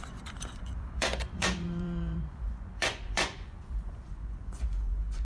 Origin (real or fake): fake